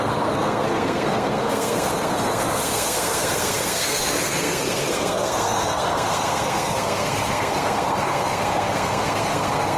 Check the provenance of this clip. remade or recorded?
remade